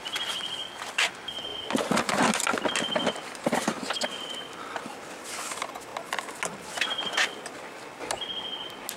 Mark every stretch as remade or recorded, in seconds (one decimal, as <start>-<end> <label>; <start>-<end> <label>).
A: 0.0-0.6 recorded; 0.6-1.1 remade; 1.1-9.0 recorded